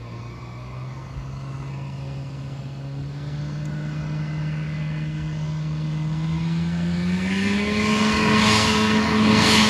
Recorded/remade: remade